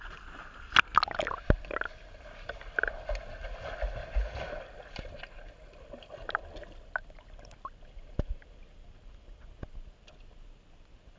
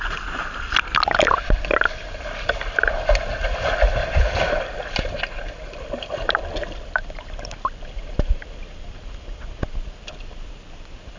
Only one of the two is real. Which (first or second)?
first